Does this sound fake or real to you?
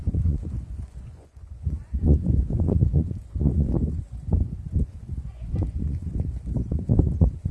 fake